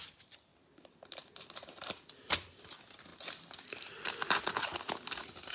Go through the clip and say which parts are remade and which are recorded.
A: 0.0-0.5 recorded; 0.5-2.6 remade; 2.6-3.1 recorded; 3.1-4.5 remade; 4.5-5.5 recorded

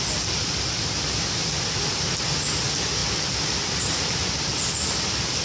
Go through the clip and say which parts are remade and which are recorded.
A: 0.0-5.4 recorded

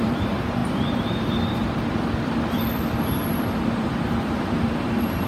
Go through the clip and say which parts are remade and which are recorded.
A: 0.0-1.6 remade; 1.6-3.8 recorded; 3.8-5.3 remade

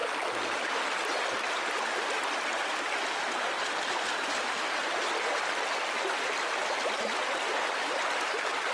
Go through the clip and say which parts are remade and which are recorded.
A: 0.0-8.7 recorded

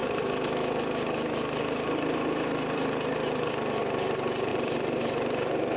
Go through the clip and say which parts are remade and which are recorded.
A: 0.0-3.5 remade; 3.5-4.5 recorded; 4.5-5.8 remade

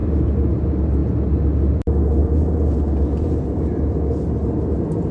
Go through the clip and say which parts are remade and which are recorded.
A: 0.0-0.6 remade; 0.6-2.2 recorded; 2.2-3.8 remade; 3.8-5.1 recorded

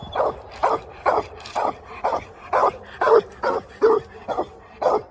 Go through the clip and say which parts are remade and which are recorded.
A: 0.0-0.6 recorded; 0.6-3.7 remade; 3.7-5.1 recorded